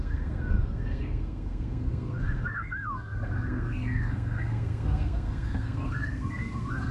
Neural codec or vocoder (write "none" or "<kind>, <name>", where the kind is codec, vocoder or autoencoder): codec, SNAC